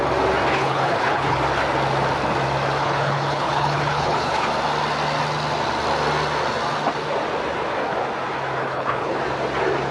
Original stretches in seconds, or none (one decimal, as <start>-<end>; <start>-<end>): 0.0-0.5; 1.4-2.8; 4.5-8.6; 9.2-9.9